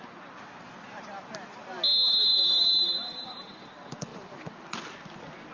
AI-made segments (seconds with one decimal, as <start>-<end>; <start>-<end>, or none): 2.6-3.6; 4.1-4.7